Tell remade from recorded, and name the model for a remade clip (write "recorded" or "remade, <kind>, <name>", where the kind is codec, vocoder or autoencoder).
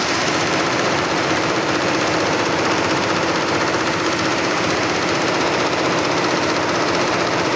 remade, vocoder, BigVGAN v2